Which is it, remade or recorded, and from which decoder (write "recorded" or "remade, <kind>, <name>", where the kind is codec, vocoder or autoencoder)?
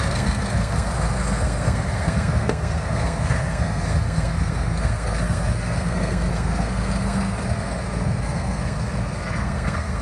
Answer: remade, codec, SNAC